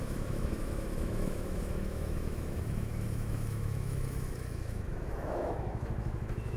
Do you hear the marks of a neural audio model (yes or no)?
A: yes